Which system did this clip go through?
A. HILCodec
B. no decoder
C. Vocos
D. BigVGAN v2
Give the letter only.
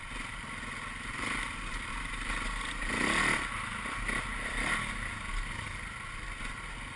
B